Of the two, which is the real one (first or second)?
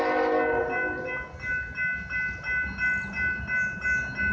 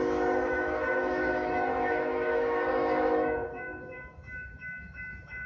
first